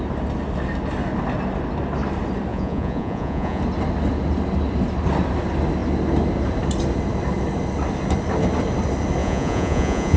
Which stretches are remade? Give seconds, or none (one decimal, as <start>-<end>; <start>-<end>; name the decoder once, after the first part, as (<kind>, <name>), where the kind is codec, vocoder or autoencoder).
2.5-3.6 (vocoder, Vocos); 9.2-10.2

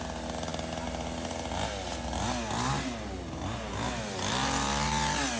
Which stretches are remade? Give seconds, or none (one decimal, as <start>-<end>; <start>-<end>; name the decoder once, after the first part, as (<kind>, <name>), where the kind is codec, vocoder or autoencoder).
none

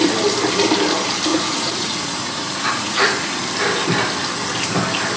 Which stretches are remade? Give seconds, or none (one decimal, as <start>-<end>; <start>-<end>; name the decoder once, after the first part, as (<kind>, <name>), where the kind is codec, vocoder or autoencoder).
1.3-3.4 (vocoder, Vocos)

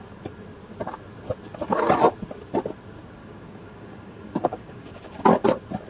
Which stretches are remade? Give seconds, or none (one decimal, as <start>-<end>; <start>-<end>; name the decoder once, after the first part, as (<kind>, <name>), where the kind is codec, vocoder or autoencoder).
3.2-5.2 (codec, DAC)